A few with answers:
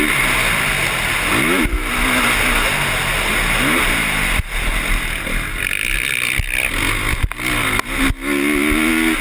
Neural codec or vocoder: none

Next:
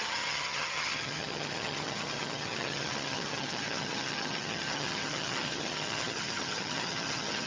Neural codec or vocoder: vocoder, HiFi-GAN